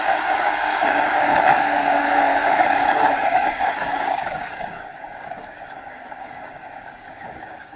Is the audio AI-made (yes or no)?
yes